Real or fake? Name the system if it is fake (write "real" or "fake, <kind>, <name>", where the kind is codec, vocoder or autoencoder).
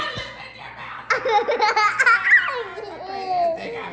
real